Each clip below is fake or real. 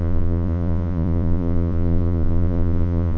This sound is fake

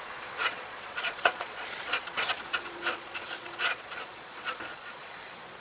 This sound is fake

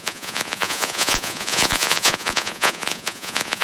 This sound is fake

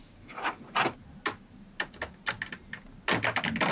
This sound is real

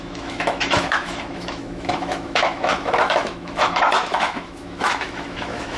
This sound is fake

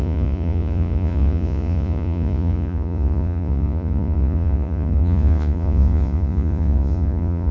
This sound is fake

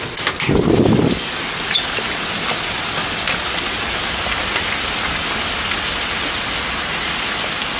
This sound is real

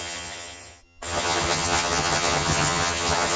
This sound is fake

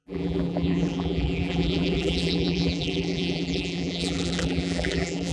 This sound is fake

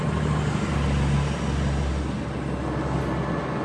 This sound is real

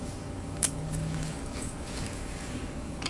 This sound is fake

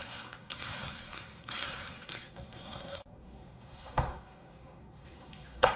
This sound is fake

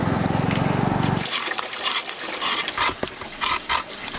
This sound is real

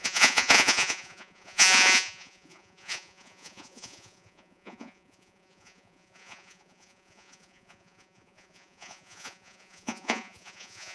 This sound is fake